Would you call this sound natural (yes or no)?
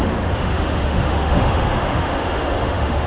no